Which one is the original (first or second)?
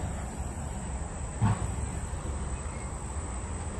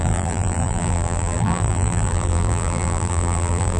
first